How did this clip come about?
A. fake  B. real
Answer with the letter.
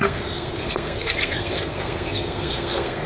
A